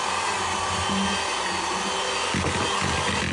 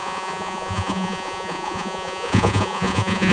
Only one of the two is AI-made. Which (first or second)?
second